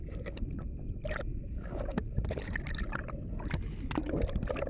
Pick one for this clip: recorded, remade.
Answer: recorded